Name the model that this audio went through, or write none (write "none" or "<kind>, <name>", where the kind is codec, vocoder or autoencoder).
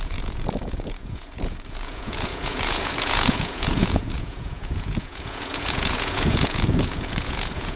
vocoder, Vocos